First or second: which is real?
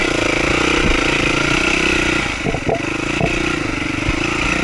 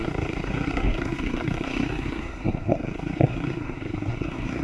first